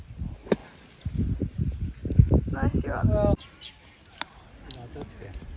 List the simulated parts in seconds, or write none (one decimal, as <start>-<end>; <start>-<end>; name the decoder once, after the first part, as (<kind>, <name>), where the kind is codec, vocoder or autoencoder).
none